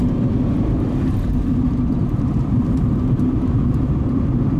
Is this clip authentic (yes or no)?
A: no